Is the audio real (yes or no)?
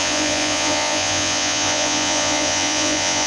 no